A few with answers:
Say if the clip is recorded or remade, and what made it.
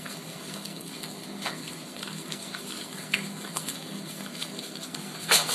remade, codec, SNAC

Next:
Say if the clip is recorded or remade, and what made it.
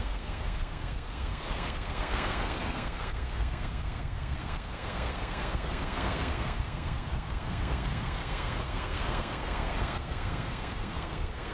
remade, codec, SNAC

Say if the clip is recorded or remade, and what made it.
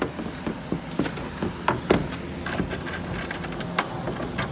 recorded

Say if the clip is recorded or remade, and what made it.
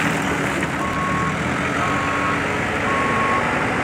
recorded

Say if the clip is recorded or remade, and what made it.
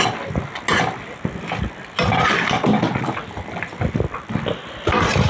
recorded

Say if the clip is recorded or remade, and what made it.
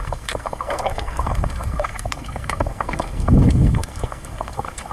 remade, codec, SNAC